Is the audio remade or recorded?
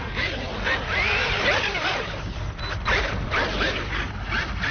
recorded